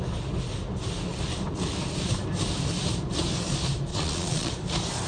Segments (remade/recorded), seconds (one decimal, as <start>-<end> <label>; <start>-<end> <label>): 0.0-3.9 recorded; 3.9-4.5 remade; 4.5-5.1 recorded